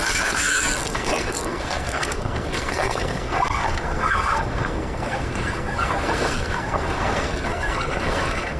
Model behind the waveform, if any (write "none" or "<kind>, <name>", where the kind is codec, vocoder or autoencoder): codec, SNAC